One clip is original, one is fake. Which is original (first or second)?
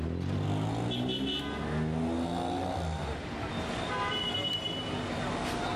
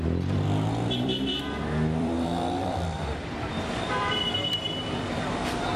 first